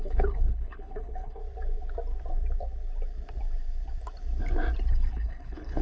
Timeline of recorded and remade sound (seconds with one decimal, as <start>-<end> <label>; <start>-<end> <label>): 0.0-1.4 remade; 1.4-4.9 recorded; 4.9-5.8 remade